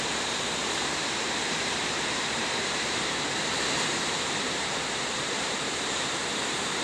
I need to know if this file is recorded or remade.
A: remade